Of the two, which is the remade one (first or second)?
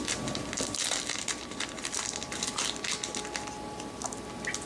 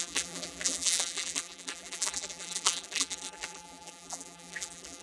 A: second